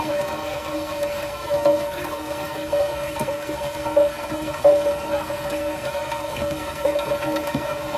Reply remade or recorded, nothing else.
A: remade